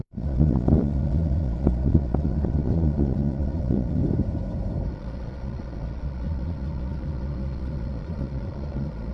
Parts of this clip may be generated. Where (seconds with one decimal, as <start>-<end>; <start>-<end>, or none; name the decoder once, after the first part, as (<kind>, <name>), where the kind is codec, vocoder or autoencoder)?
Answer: 0.0-4.0 (vocoder, Vocos); 4.9-9.1